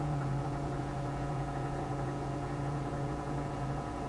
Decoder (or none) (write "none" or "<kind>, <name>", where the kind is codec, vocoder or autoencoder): vocoder, Vocos